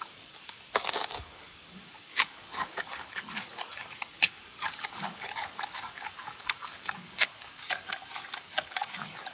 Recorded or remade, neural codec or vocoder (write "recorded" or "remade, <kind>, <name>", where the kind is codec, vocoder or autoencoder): remade, codec, DAC